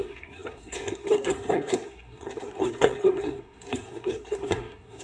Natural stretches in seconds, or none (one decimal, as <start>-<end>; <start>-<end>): none